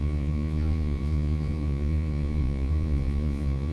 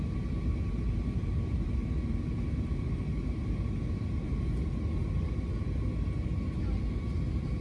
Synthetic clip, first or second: first